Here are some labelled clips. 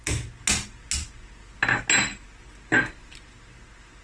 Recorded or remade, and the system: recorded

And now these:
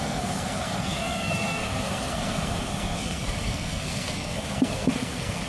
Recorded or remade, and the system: remade, codec, SNAC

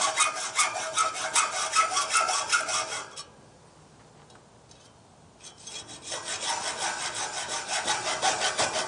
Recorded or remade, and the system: recorded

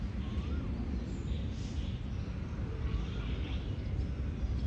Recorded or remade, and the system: recorded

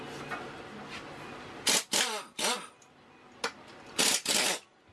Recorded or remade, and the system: recorded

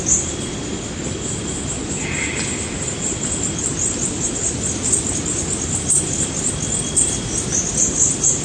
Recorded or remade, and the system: recorded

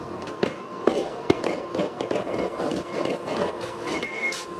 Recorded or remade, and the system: remade, codec, SNAC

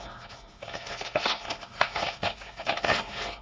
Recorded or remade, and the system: remade, codec, SNAC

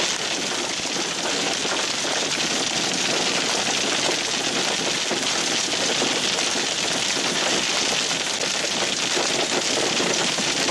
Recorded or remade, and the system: recorded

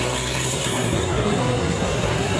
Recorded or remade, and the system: remade, codec, SNAC